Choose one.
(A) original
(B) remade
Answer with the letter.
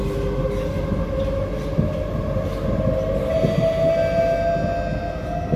A